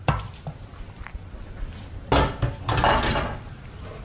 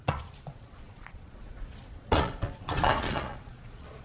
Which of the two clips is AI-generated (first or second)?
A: second